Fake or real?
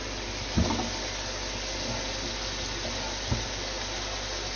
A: real